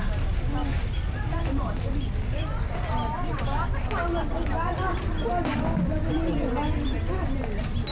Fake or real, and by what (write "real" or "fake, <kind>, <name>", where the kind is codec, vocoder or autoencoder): real